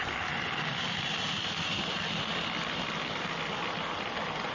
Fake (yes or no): no